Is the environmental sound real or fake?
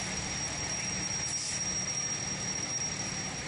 real